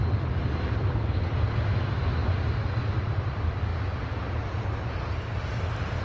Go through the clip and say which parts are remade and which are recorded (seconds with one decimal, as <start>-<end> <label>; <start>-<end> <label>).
0.0-6.0 recorded